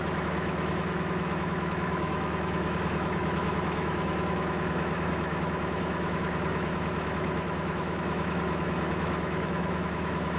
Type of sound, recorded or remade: remade